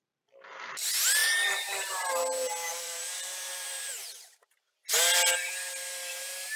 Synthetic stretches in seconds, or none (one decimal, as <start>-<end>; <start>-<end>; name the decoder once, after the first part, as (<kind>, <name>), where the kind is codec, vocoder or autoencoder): 1.2-2.2 (vocoder, BigVGAN v2); 2.7-4.6